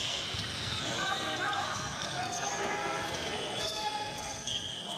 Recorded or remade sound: remade